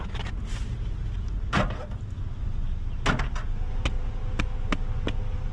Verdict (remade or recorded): recorded